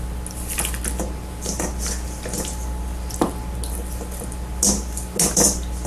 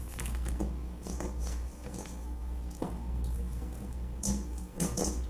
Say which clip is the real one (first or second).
first